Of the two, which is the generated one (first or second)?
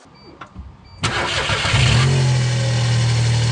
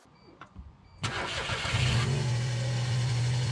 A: second